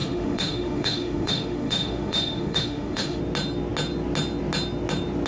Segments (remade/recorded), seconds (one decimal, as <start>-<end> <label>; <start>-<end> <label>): 0.0-3.2 remade; 3.2-5.3 recorded